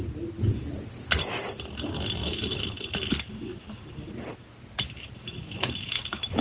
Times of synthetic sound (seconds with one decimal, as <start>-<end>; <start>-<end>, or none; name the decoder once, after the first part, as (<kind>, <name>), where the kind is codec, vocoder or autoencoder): 5.2-6.4 (autoencoder, DAC-VAE)